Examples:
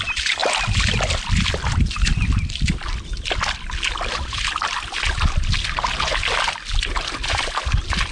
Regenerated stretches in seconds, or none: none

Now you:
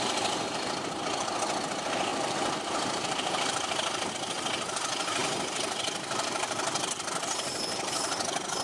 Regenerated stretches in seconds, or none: 2.1-4.1 (vocoder, BigVGAN v2); 5.2-7.2

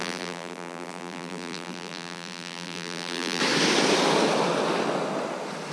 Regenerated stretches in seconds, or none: 0.0-3.4 (vocoder, BigVGAN v2)

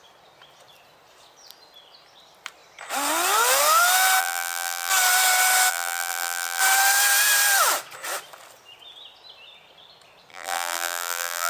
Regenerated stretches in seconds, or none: 4.2-4.9 (vocoder, BigVGAN v2); 5.7-6.6; 10.3-11.5

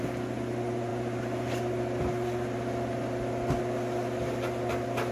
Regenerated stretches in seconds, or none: none

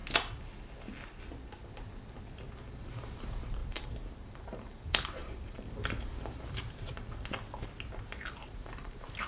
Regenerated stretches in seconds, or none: 2.7-6.9 (vocoder, BigVGAN v2); 8.5-9.3

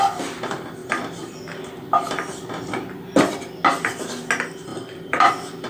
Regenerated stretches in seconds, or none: 4.7-5.3 (vocoder, BigVGAN v2)